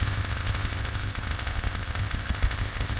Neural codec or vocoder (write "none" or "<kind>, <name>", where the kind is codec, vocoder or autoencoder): codec, ZipCodec